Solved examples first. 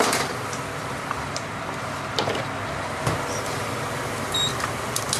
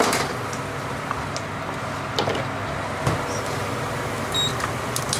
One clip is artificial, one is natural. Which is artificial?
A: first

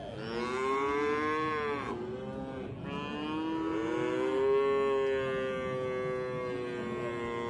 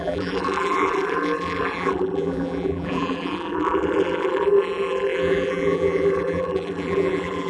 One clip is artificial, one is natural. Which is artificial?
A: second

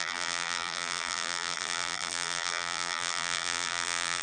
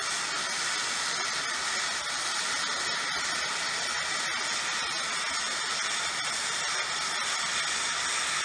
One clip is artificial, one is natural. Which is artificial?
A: first